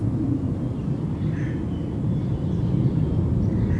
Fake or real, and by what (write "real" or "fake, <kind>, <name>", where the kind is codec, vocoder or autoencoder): real